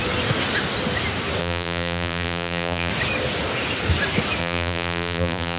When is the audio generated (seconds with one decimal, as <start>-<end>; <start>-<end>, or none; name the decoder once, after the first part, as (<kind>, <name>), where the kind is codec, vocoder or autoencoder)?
1.4-2.9 (vocoder, BigVGAN v2); 4.4-5.6